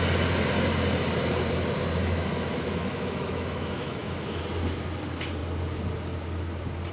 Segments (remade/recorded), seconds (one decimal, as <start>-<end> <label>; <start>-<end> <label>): 0.0-2.0 recorded; 2.0-4.4 remade; 4.4-6.9 recorded